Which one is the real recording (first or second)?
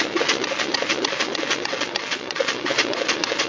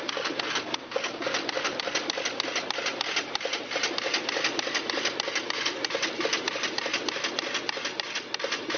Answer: second